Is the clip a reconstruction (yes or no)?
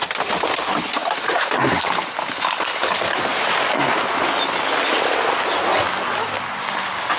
no